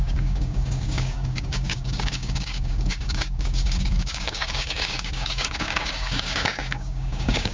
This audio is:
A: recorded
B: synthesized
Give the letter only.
B